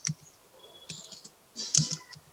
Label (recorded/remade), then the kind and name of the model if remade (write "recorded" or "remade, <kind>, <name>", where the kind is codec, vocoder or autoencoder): recorded